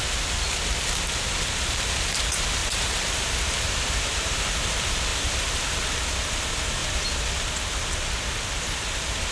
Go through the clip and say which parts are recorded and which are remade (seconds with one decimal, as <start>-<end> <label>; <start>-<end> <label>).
0.0-2.6 recorded; 2.6-4.2 remade; 4.2-5.1 recorded; 5.1-5.9 remade; 5.9-9.3 recorded